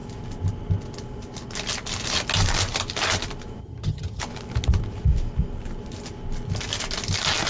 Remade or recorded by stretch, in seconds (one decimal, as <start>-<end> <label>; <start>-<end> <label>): 0.0-3.6 recorded; 3.6-4.2 remade; 4.2-7.5 recorded